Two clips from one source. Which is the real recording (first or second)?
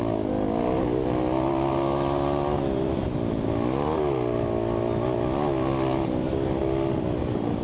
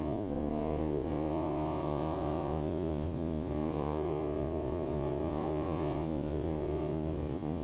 first